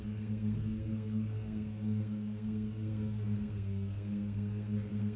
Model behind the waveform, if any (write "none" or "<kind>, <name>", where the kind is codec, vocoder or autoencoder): codec, SNAC